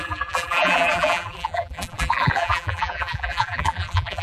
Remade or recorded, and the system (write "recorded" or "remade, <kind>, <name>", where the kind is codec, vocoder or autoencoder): remade, vocoder, BigVGAN v2